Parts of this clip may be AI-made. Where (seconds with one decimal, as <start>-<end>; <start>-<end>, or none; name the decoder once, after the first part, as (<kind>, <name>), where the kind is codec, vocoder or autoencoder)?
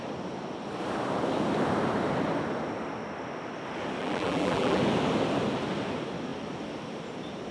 4.0-4.8 (vocoder, BigVGAN v2)